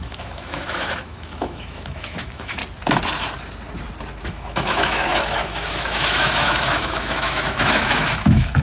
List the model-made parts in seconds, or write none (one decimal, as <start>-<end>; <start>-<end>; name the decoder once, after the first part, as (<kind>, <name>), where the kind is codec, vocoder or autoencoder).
0.0-2.6 (autoencoder, DAC-VAE); 4.2-8.6

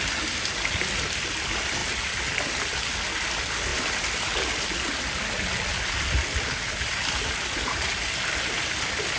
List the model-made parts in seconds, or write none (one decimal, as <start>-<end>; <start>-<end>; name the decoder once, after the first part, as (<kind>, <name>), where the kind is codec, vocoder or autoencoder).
none

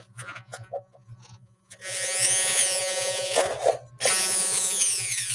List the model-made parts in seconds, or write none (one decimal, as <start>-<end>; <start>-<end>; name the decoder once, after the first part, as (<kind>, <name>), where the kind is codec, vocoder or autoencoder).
0.0-3.5 (vocoder, Vocos); 4.1-5.3

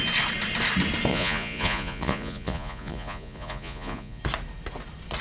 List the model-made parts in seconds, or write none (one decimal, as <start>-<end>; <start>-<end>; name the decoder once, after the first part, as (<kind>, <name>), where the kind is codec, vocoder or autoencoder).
1.1-4.2 (vocoder, Vocos)

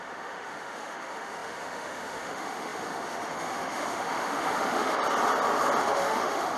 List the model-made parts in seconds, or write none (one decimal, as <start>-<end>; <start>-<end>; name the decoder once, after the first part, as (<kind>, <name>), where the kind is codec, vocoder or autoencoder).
0.0-5.0 (autoencoder, DAC-VAE); 5.8-6.6

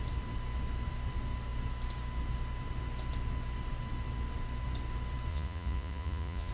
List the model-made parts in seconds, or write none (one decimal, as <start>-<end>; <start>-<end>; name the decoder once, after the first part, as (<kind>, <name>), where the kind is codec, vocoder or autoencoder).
5.3-6.5 (vocoder, Vocos)